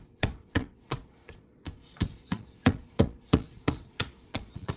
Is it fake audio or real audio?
fake